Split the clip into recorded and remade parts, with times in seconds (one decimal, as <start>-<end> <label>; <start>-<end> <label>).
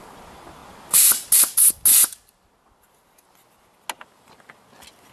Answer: 0.0-5.1 recorded